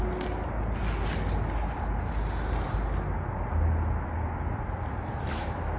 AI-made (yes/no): no